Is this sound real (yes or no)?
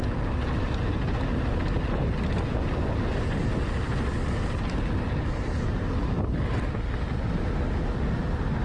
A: yes